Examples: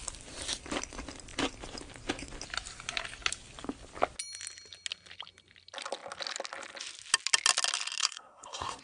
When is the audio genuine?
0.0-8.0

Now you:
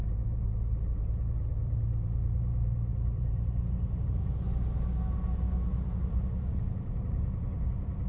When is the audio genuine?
4.3-5.7

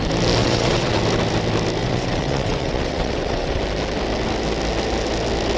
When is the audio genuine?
0.0-0.4; 1.0-1.8; 3.6-5.6

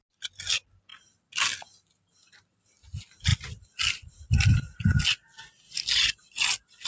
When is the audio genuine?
0.0-6.9